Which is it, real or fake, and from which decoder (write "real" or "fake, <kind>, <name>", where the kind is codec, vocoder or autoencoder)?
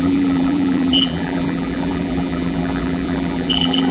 fake, vocoder, BigVGAN v2